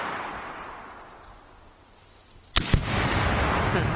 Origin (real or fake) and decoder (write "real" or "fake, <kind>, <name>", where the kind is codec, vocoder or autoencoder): real